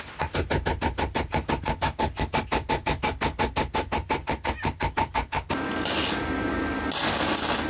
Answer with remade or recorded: recorded